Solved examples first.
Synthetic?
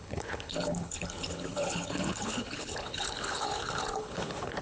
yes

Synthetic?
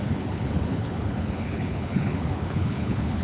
yes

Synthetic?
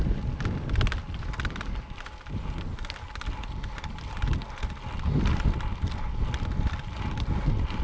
no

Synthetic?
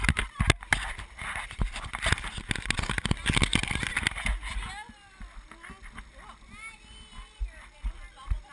no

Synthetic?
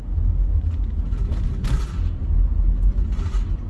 no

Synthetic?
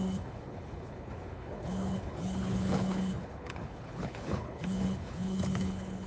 yes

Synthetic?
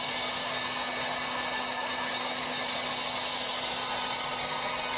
no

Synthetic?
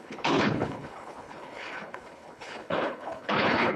yes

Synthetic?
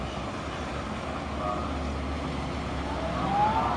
no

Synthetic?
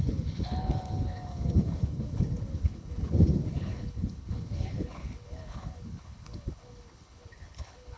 yes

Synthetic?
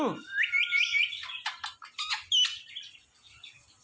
no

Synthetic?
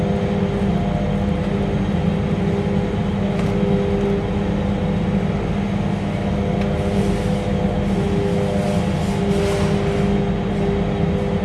no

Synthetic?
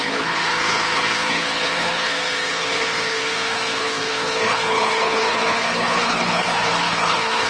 yes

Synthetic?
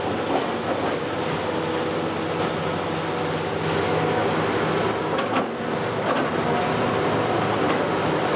no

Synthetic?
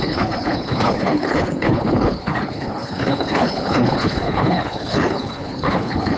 yes